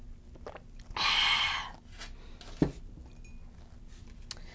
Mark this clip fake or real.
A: real